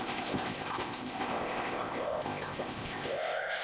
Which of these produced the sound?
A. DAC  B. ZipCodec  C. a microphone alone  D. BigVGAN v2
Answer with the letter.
B